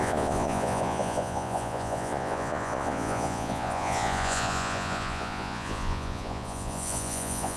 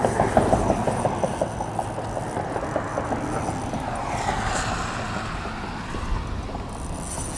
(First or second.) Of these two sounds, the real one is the second